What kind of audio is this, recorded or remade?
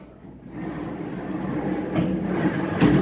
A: recorded